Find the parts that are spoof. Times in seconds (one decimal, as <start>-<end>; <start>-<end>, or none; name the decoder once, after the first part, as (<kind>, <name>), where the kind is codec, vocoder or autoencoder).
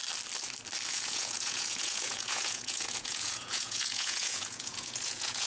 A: 0.9-5.5 (vocoder, Vocos)